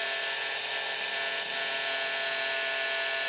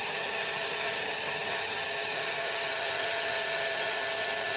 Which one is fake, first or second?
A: second